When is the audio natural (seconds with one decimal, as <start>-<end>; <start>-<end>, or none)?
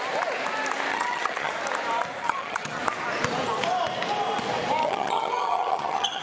0.0-0.9; 1.5-2.2; 2.8-4.8